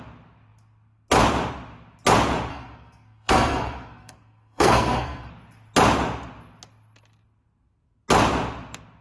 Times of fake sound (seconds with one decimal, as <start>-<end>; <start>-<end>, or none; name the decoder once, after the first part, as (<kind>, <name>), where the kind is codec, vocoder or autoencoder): 2.5-5.3 (codec, SNAC)